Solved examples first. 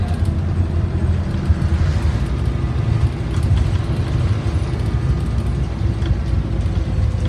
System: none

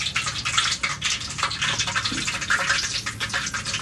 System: none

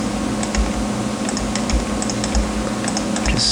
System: none